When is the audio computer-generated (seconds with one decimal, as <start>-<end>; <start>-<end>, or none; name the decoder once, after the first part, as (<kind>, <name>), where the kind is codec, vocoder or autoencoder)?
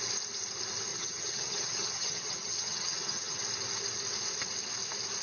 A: 0.9-3.4 (vocoder, HiFi-GAN)